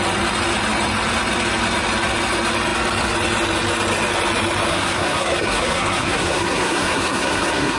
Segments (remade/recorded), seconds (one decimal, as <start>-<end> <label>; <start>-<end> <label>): 0.0-4.7 recorded; 4.7-7.8 remade